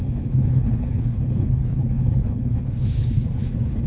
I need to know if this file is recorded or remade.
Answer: remade